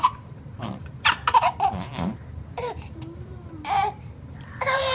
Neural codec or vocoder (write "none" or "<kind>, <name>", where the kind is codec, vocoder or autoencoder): vocoder, BigVGAN v2